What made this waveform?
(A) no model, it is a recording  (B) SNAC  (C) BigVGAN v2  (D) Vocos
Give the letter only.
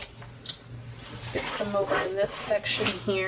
A